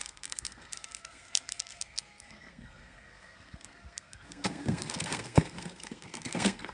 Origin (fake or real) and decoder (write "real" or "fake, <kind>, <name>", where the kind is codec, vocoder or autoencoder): fake, codec, SNAC